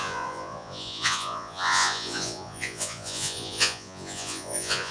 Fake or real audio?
fake